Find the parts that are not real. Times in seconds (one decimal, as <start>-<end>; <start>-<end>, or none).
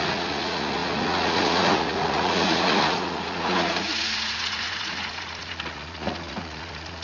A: 0.0-7.0